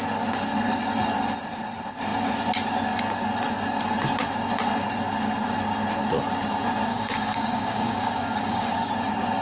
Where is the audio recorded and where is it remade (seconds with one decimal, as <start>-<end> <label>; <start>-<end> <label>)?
0.0-6.9 recorded; 6.9-8.9 remade; 8.9-9.4 recorded